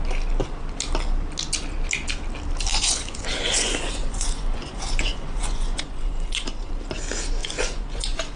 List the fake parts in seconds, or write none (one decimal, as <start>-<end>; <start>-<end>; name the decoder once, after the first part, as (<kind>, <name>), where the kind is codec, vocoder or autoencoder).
2.7-6.7 (vocoder, Vocos); 7.4-8.4